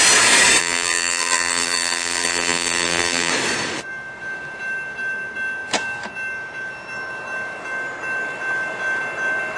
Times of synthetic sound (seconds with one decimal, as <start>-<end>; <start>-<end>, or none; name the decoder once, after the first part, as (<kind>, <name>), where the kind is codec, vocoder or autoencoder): 0.6-3.3 (vocoder, BigVGAN v2)